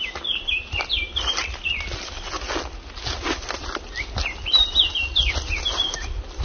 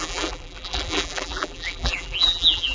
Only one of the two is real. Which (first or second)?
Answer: first